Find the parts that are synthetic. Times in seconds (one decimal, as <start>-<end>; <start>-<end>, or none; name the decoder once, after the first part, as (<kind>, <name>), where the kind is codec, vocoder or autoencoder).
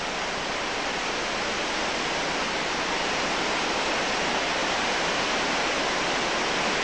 none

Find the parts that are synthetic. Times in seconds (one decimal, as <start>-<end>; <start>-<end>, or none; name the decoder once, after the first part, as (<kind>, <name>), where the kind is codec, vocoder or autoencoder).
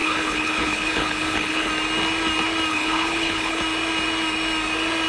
0.0-1.7 (codec, HILCodec); 2.7-3.6